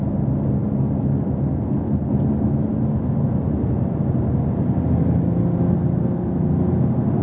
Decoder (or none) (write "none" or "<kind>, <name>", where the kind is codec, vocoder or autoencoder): none